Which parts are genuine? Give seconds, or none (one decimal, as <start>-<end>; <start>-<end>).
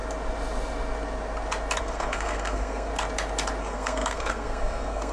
0.0-1.8; 2.9-3.6